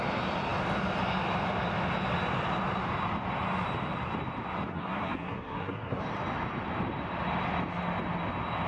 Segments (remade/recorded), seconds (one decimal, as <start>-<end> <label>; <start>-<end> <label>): 0.0-4.7 recorded; 4.7-6.0 remade; 6.0-8.7 recorded